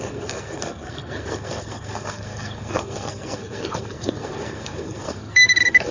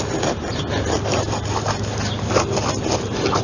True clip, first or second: second